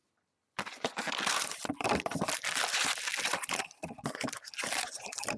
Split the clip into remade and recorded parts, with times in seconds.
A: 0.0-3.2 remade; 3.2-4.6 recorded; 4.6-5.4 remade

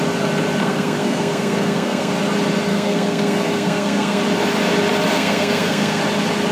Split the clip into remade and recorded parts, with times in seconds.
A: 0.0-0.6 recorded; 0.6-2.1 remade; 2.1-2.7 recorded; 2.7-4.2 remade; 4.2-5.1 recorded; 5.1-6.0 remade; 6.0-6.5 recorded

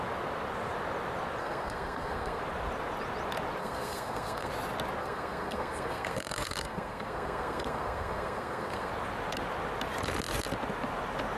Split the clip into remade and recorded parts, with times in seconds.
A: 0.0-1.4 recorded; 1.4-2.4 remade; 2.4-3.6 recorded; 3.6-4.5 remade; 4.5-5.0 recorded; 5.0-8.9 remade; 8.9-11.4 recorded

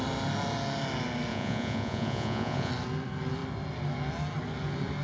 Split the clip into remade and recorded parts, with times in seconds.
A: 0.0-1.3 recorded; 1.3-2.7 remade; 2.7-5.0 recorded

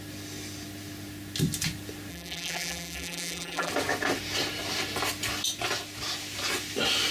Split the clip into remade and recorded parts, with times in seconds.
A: 0.0-2.1 recorded; 2.1-3.7 remade; 3.7-7.1 recorded

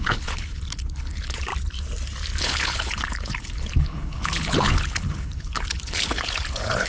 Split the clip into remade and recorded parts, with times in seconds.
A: 0.0-1.5 remade; 1.5-2.4 recorded; 2.4-6.9 remade

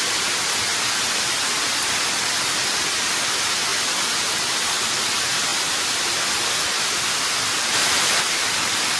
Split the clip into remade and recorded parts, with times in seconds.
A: 0.0-9.0 recorded

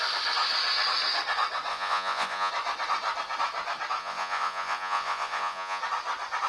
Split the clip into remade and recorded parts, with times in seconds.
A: 0.0-1.7 recorded; 1.7-2.5 remade; 2.5-4.0 recorded; 4.0-5.8 remade; 5.8-6.5 recorded